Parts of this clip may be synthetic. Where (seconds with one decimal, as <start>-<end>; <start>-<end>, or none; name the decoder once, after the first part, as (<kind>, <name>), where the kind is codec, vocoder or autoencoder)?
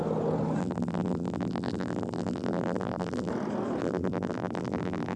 0.6-3.3 (vocoder, BigVGAN v2); 3.8-5.2